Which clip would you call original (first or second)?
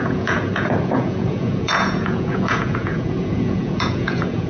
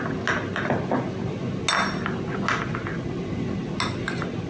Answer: second